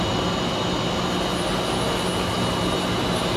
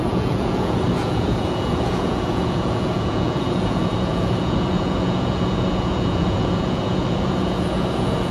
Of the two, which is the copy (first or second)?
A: second